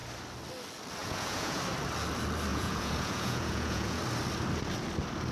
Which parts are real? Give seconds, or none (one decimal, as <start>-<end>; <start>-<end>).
0.0-1.0; 1.6-2.5; 4.0-5.3